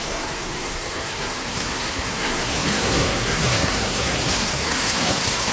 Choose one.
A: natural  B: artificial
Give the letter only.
B